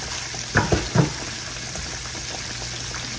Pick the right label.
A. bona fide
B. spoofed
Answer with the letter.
A